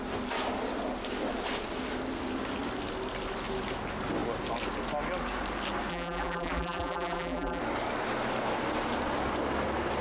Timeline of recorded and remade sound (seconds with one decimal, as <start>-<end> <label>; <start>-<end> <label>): 0.0-5.9 recorded; 5.9-7.6 remade; 7.6-10.0 recorded